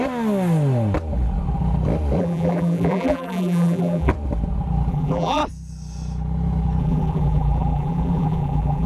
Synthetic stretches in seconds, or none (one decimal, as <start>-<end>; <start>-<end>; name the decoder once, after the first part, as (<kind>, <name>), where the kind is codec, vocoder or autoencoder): 2.2-4.1 (vocoder, BigVGAN v2); 4.9-5.4; 6.8-8.9